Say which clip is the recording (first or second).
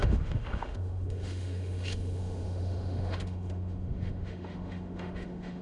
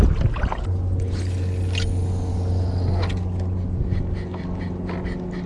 second